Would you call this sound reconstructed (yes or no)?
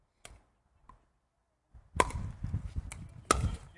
no